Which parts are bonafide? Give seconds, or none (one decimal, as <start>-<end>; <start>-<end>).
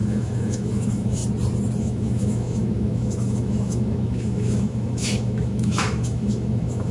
1.2-1.8